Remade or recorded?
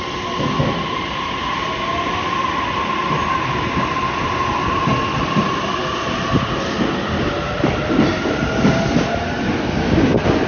recorded